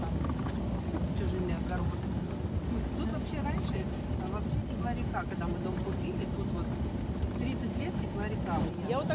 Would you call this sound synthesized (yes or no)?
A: no